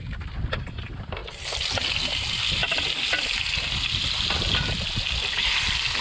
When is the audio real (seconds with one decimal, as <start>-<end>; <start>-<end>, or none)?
0.0-6.0